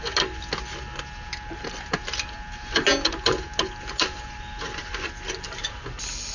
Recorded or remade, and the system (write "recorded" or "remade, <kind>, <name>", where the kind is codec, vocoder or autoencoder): recorded